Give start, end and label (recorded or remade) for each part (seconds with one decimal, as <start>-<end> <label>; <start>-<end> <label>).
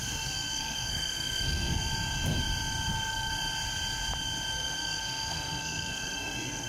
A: 0.0-1.9 remade; 1.9-2.9 recorded; 2.9-3.3 remade; 3.3-4.5 recorded; 4.5-6.7 remade